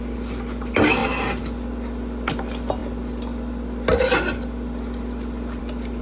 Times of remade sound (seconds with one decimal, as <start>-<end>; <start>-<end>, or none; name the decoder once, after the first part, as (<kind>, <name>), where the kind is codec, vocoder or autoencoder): none